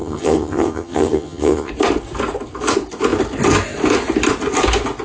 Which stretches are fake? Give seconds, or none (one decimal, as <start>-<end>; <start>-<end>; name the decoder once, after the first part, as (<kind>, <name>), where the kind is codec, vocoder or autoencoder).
0.0-1.7 (vocoder, HiFi-GAN)